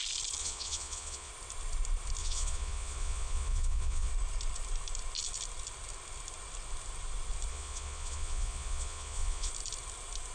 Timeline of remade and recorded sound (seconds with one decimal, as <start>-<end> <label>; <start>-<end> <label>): 0.0-0.4 recorded; 0.4-1.3 remade; 1.3-2.2 recorded; 2.2-4.1 remade; 4.1-7.5 recorded; 7.5-9.5 remade; 9.5-10.3 recorded